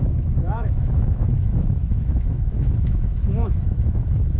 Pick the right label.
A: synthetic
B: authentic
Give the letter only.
A